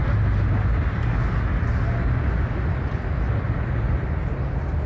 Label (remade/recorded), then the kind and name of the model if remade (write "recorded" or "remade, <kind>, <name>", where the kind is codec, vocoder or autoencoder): recorded